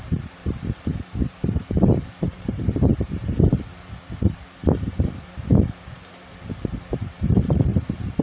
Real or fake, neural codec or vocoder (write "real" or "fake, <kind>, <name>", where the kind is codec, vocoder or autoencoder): fake, vocoder, BigVGAN v2